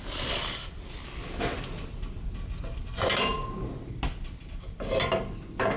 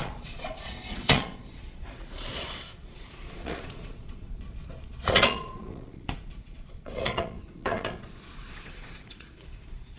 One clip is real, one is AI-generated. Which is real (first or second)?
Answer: first